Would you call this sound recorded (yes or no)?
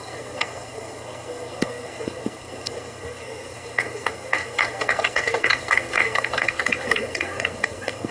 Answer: no